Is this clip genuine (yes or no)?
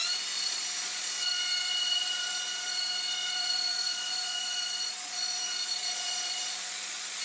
no